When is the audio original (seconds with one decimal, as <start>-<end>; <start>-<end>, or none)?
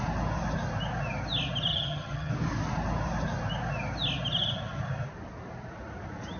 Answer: 0.0-1.7; 2.3-6.4